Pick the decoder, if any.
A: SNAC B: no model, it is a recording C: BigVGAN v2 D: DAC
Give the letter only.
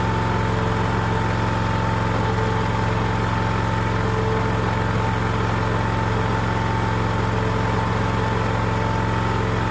B